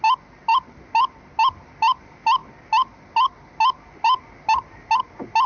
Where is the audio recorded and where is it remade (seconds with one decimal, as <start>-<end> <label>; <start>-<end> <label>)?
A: 0.0-5.5 recorded